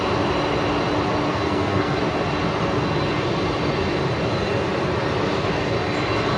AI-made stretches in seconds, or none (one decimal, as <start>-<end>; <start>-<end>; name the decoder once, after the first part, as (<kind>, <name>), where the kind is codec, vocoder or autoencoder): 1.3-2.0 (codec, SNAC)